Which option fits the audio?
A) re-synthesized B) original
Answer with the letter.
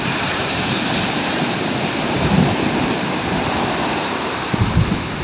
A